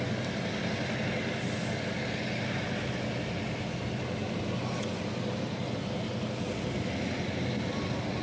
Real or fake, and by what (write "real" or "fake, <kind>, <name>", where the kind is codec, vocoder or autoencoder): real